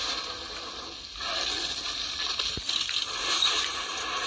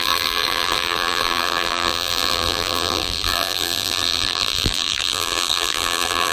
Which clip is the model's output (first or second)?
second